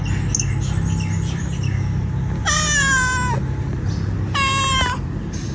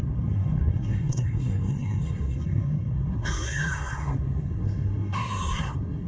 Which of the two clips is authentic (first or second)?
first